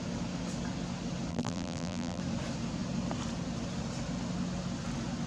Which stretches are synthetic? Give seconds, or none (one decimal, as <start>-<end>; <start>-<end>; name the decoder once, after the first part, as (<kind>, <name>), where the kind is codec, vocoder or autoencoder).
1.3-2.2 (vocoder, BigVGAN v2)

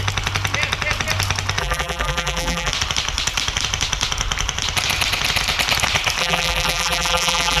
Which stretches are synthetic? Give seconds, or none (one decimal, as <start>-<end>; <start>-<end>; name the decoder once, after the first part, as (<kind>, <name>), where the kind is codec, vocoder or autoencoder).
1.6-2.7 (vocoder, BigVGAN v2); 6.2-7.6

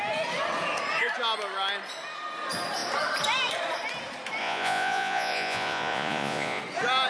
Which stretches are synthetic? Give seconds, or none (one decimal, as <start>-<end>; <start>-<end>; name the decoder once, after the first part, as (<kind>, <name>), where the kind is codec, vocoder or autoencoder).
4.4-6.6 (vocoder, Vocos)

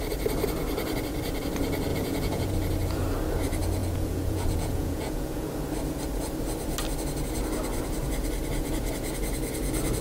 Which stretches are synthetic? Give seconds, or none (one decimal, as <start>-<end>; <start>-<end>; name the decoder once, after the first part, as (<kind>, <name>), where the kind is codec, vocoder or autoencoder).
1.9-2.5 (vocoder, Vocos); 3.8-5.5

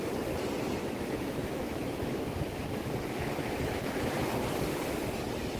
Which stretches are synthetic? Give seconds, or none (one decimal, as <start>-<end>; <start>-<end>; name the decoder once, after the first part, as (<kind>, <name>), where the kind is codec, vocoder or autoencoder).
0.8-4.1 (autoencoder, DAC-VAE)

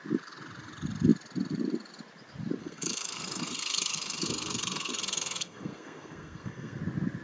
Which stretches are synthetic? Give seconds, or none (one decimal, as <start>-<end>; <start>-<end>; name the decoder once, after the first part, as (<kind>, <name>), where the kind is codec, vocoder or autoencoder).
2.6-6.8 (codec, SNAC)

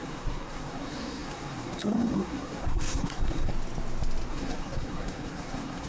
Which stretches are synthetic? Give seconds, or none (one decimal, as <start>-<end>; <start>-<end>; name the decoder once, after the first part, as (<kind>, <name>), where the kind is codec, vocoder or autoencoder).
0.0-3.5 (codec, SNAC); 4.3-5.9